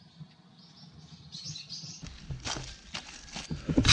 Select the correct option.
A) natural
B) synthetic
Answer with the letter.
A